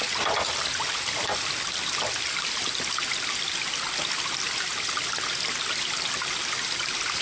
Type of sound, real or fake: real